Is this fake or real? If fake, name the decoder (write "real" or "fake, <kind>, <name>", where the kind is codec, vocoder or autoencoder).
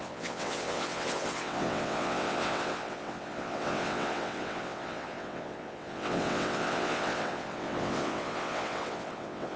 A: fake, vocoder, WaveNeXt